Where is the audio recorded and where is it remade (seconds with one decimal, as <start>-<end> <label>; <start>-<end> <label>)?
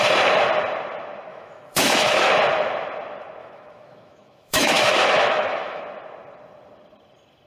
0.0-1.3 recorded; 1.3-2.3 remade; 2.3-3.4 recorded; 3.4-5.8 remade; 5.8-7.5 recorded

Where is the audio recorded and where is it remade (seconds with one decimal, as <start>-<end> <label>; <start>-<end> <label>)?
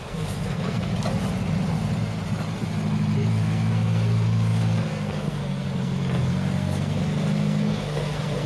0.0-0.9 remade; 0.9-3.3 recorded; 3.3-8.5 remade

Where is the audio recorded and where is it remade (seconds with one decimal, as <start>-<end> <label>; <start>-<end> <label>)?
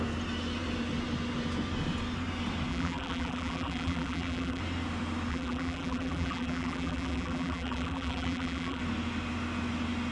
0.0-2.7 recorded; 2.7-4.6 remade; 4.6-5.3 recorded; 5.3-8.8 remade; 8.8-10.1 recorded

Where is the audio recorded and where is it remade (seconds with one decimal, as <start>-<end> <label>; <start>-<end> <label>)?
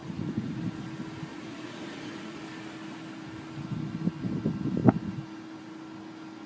0.0-0.6 remade; 0.6-1.3 recorded; 1.3-2.4 remade; 2.4-6.5 recorded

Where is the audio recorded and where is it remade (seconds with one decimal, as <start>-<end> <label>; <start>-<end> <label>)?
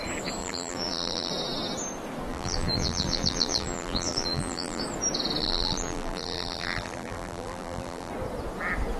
0.0-0.4 recorded; 0.4-1.3 remade; 1.3-2.3 recorded; 2.3-4.8 remade; 4.8-5.4 recorded; 5.4-8.1 remade; 8.1-9.0 recorded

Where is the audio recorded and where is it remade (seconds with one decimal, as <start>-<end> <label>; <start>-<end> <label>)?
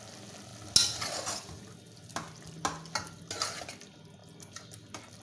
0.0-5.2 recorded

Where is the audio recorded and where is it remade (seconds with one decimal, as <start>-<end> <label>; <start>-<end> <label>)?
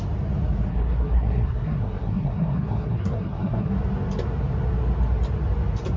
0.0-0.7 recorded; 0.7-3.7 remade; 3.7-6.0 recorded